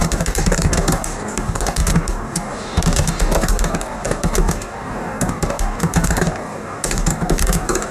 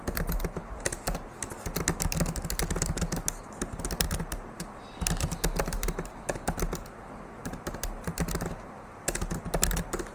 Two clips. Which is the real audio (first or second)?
second